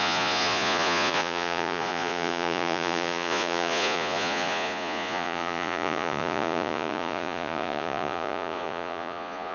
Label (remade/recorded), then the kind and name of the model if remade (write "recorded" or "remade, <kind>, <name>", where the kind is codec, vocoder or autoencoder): remade, vocoder, Vocos